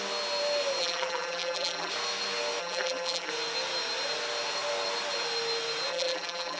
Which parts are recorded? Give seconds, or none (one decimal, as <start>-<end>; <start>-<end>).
0.0-0.8; 1.9-2.6; 3.3-5.9